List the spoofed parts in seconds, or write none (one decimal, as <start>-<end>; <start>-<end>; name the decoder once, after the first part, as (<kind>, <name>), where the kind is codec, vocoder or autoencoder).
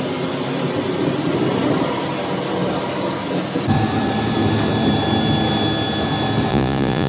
6.5-7.1 (vocoder, Vocos)